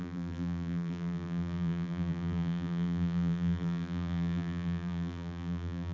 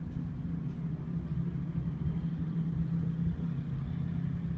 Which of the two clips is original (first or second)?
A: second